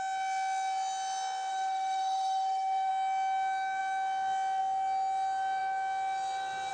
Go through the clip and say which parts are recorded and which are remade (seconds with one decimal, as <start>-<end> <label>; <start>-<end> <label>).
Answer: 0.0-1.5 recorded; 1.5-2.9 remade; 2.9-6.7 recorded

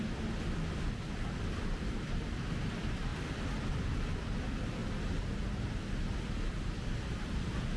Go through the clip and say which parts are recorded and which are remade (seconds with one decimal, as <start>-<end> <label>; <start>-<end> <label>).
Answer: 0.0-4.8 remade; 4.8-6.5 recorded; 6.5-7.8 remade

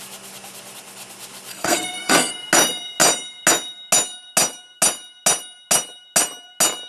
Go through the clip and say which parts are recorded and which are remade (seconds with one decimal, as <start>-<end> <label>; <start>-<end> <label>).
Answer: 0.0-1.5 recorded; 1.5-2.3 remade; 2.3-6.9 recorded